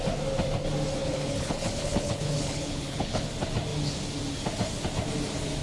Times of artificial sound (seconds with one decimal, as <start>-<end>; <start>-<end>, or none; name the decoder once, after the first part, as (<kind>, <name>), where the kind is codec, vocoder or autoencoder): 1.0-3.3 (codec, HILCodec)